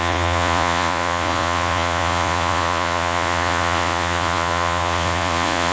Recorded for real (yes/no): no